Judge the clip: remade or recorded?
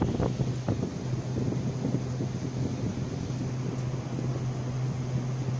recorded